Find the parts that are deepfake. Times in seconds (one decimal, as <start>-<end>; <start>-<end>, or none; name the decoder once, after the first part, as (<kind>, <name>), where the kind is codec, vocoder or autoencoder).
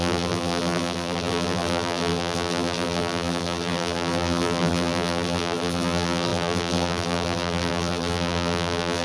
0.0-9.0 (vocoder, BigVGAN v2)